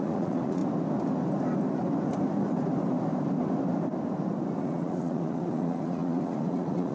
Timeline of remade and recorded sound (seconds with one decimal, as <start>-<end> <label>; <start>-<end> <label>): 0.0-0.6 remade; 0.6-4.6 recorded; 4.6-6.9 remade